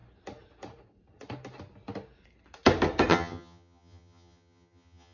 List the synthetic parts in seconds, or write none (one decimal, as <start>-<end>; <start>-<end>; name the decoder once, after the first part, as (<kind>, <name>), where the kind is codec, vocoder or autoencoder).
3.1-5.1 (vocoder, HiFi-GAN)